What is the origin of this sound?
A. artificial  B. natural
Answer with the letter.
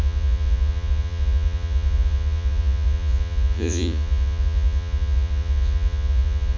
A